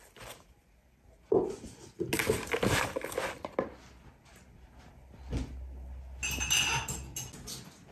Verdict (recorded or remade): recorded